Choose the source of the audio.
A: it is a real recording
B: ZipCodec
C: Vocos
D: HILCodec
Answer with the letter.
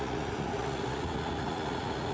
C